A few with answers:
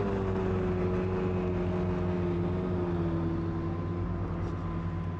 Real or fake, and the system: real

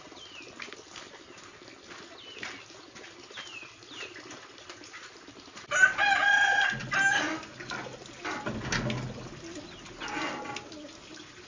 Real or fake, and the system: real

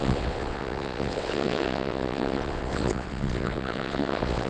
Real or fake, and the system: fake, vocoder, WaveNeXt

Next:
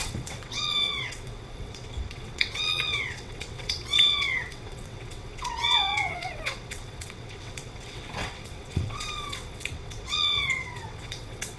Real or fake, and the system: fake, vocoder, WaveNeXt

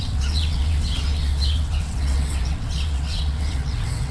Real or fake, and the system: fake, vocoder, WaveNeXt